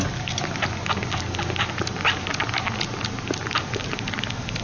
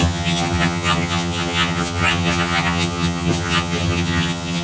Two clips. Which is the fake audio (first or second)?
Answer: second